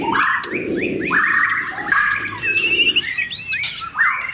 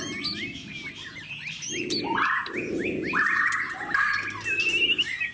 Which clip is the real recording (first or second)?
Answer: second